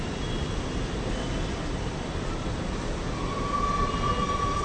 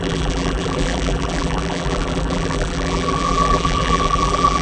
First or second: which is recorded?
first